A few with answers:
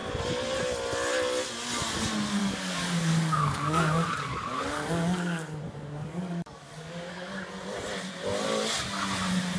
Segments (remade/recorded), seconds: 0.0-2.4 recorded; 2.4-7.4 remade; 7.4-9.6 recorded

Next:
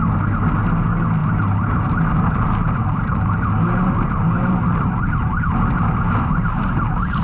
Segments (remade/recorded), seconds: 0.0-1.2 recorded; 1.2-5.4 remade; 5.4-7.2 recorded

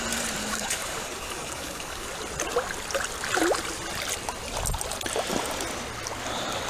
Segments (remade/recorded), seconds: 0.0-0.4 recorded; 0.4-2.1 remade; 2.1-6.7 recorded

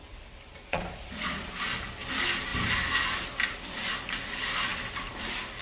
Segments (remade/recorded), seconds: 0.0-0.7 recorded; 0.7-1.5 remade; 1.5-5.6 recorded